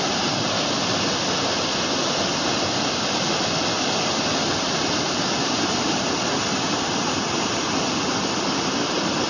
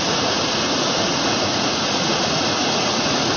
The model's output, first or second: second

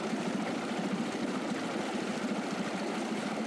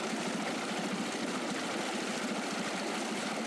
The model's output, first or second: first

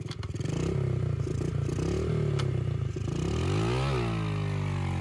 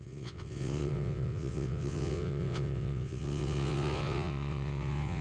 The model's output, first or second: second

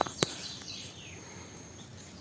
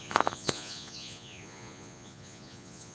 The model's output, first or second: second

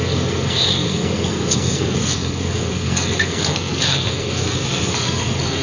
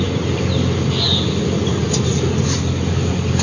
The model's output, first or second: first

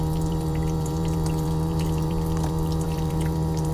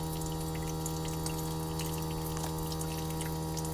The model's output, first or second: first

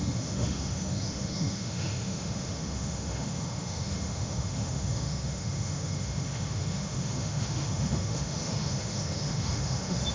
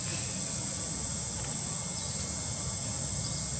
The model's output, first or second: first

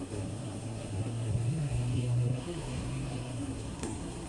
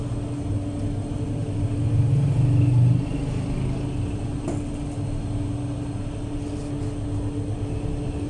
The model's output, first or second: first